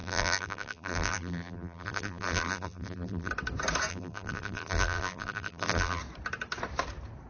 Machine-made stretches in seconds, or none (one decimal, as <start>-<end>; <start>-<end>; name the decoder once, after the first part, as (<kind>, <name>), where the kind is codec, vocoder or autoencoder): 0.0-3.3 (vocoder, BigVGAN v2); 3.9-6.0